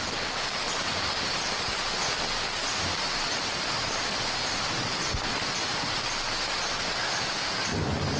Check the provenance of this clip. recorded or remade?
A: recorded